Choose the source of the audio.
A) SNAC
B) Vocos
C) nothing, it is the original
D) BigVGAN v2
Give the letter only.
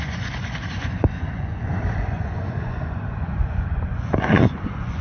B